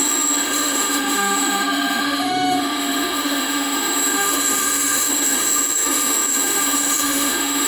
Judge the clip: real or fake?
fake